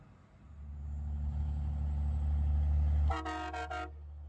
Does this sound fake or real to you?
real